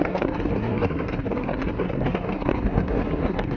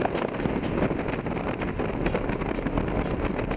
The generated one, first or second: first